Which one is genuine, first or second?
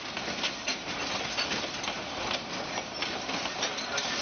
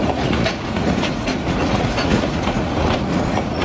first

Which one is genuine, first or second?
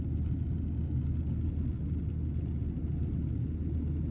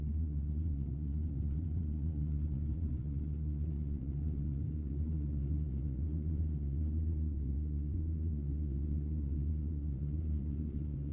first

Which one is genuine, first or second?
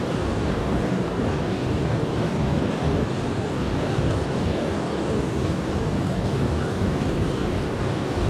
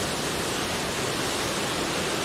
second